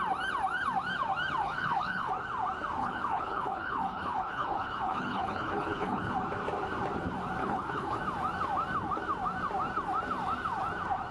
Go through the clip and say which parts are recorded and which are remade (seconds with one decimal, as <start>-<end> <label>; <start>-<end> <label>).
0.0-1.4 recorded; 1.4-2.1 remade; 2.1-2.8 recorded; 2.8-6.1 remade; 6.1-7.4 recorded; 7.4-8.0 remade; 8.0-11.1 recorded